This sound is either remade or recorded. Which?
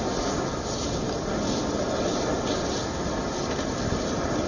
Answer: recorded